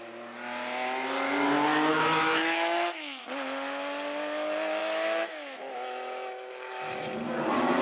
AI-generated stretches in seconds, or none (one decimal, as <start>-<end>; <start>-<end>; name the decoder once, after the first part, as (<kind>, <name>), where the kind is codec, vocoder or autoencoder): 1.9-3.2 (autoencoder, DAC-VAE); 4.8-7.1

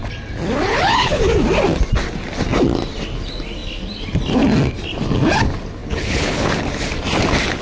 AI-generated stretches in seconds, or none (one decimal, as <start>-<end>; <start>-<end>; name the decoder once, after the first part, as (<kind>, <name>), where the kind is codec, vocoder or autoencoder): 0.7-1.2 (codec, HILCodec); 5.8-6.5

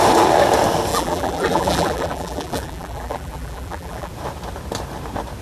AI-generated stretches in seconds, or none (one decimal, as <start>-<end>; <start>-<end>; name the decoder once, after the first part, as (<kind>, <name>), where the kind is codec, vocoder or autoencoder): 0.9-4.1 (vocoder, BigVGAN v2)

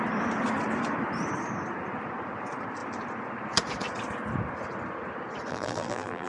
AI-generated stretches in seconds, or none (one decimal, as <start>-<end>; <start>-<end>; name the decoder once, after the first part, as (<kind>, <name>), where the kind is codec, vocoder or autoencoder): 5.5-6.3 (vocoder, BigVGAN v2)